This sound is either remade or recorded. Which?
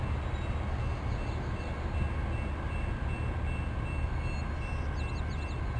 recorded